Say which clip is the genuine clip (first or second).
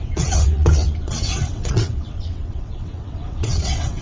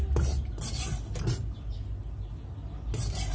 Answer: second